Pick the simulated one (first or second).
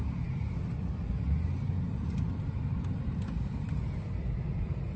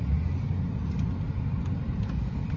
first